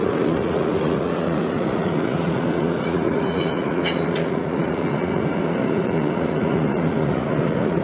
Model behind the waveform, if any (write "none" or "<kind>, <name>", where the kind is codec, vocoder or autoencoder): vocoder, Vocos